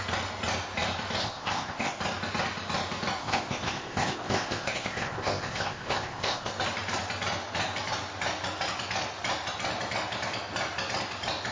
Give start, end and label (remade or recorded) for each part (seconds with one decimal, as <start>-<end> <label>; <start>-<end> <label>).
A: 0.0-1.2 recorded; 1.2-2.0 remade; 2.0-3.2 recorded; 3.2-6.5 remade; 6.5-11.5 recorded

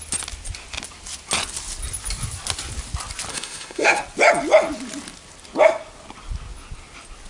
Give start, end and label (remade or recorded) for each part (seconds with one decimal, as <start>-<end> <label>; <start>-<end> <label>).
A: 0.0-3.3 recorded; 3.3-4.0 remade; 4.0-7.3 recorded